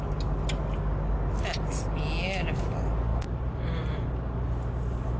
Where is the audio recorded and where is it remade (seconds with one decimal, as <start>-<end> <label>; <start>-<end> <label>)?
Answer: 0.0-3.1 recorded; 3.1-4.1 remade; 4.1-5.2 recorded